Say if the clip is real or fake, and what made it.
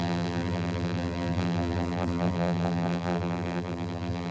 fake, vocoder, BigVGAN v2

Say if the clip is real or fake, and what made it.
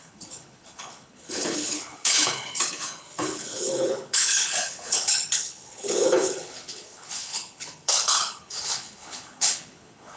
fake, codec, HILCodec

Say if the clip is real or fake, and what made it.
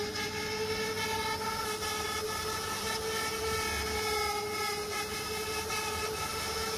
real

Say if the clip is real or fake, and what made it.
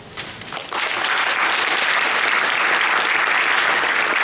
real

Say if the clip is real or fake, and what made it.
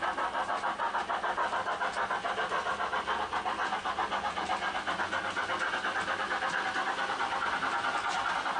real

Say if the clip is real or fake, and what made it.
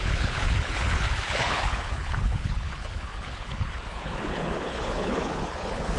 fake, codec, HILCodec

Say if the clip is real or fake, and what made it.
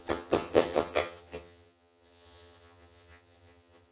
fake, vocoder, HiFi-GAN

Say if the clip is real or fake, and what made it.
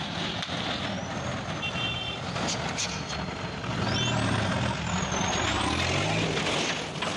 real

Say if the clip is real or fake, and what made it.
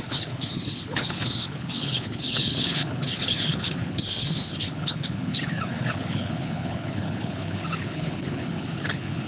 fake, codec, HILCodec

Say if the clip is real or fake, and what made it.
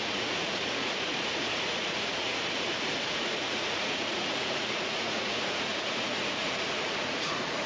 fake, vocoder, Vocos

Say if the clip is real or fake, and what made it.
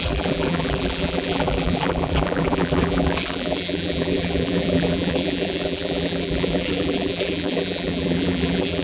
fake, vocoder, BigVGAN v2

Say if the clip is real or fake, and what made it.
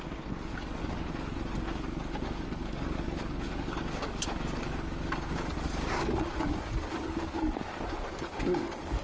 fake, codec, DAC